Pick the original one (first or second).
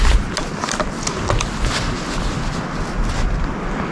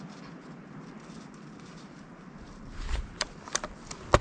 first